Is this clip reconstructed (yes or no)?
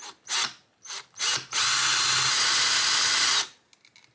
no